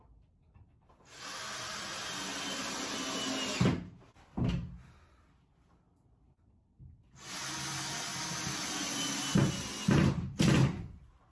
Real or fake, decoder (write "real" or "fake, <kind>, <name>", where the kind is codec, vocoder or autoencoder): real